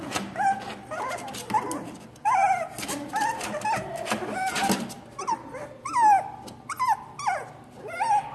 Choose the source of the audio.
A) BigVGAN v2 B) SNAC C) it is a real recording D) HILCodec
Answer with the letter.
C